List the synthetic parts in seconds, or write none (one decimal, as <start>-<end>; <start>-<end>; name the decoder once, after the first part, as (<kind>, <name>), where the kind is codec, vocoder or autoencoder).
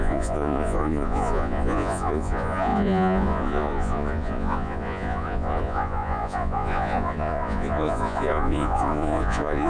0.0-9.7 (vocoder, Vocos)